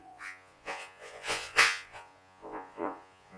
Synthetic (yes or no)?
yes